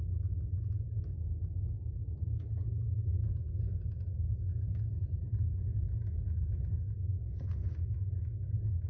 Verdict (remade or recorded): recorded